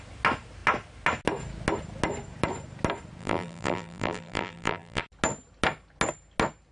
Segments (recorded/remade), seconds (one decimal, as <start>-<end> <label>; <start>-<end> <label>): 0.0-3.2 recorded; 3.2-5.0 remade; 5.0-6.7 recorded